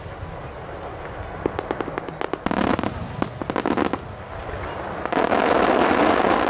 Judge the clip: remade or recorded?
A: recorded